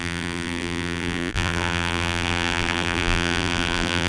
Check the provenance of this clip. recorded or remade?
remade